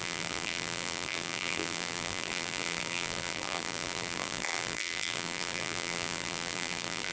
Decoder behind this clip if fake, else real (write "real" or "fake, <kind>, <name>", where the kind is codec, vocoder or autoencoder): fake, vocoder, BigVGAN v2